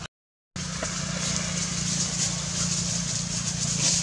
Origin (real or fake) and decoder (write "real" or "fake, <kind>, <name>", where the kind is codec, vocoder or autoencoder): real